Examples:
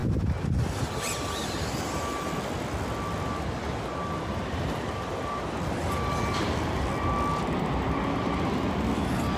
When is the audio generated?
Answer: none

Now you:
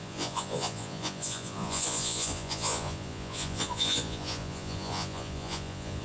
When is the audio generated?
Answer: 0.0-6.0 (vocoder, Vocos)